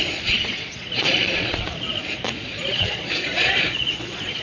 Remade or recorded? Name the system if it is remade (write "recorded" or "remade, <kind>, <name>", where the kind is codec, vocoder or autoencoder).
remade, vocoder, Vocos